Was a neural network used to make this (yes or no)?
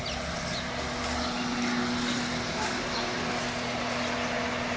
no